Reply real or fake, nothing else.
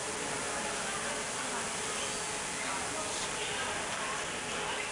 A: real